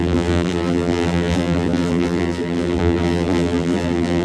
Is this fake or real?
fake